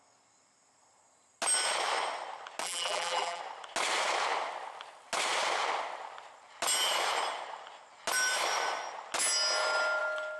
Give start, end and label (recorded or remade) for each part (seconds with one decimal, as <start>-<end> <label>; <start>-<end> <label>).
0.0-2.6 recorded; 2.6-3.4 remade; 3.4-10.4 recorded